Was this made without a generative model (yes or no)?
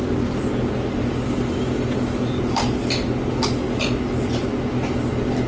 yes